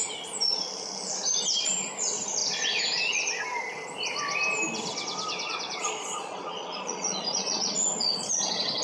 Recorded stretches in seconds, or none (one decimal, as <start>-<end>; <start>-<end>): 0.0-4.9